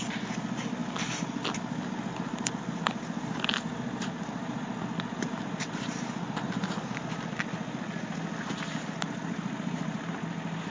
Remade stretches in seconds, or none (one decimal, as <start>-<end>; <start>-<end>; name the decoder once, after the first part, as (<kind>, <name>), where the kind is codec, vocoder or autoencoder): none